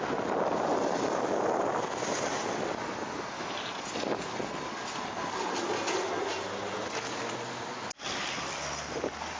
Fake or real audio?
real